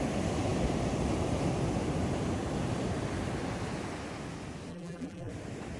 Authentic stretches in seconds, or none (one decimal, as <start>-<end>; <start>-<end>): 0.0-4.7; 5.3-5.8